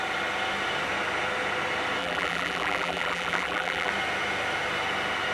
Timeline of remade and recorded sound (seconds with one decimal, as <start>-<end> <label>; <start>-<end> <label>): 0.0-2.0 recorded; 2.0-3.9 remade; 3.9-5.3 recorded